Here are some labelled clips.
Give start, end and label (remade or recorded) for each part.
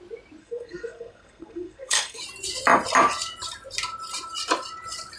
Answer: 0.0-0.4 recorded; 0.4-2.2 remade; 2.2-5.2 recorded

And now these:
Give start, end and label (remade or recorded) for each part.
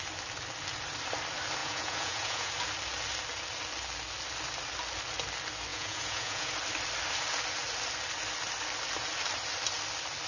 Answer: 0.0-1.6 recorded; 1.6-2.5 remade; 2.5-5.7 recorded; 5.7-6.5 remade; 6.5-10.3 recorded